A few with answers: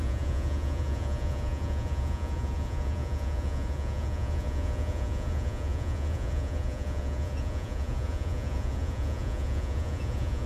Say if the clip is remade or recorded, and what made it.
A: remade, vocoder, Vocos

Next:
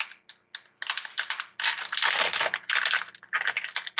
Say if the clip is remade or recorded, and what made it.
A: recorded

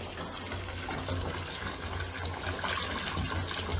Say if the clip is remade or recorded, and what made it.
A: recorded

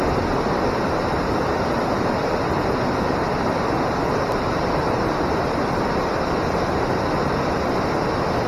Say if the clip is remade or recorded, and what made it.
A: recorded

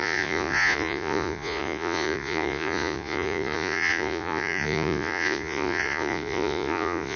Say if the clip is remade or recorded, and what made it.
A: remade, vocoder, Vocos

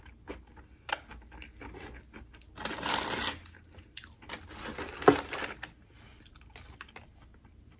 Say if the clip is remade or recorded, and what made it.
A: recorded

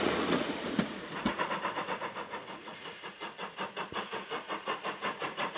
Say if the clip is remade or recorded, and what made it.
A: remade, vocoder, Vocos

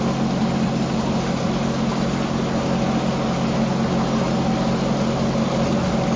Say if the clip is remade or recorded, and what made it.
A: recorded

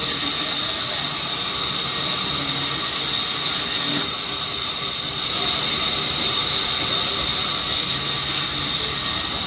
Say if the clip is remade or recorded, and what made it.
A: recorded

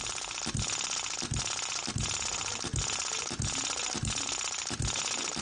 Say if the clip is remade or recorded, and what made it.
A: recorded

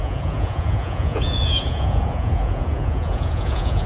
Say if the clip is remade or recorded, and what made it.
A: remade, vocoder, Vocos